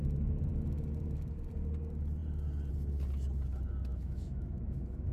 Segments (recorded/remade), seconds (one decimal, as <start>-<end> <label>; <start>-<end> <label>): 0.0-3.9 recorded; 3.9-5.1 remade